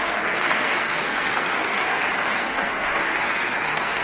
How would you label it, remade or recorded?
remade